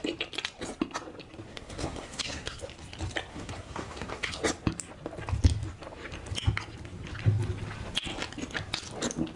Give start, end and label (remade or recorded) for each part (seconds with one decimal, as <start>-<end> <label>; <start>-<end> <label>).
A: 0.0-1.5 recorded; 1.5-2.6 remade; 2.6-3.3 recorded; 3.3-4.3 remade; 4.3-9.4 recorded